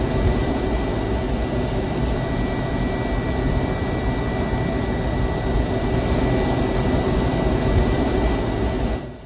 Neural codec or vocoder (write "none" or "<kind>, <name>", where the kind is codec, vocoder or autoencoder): none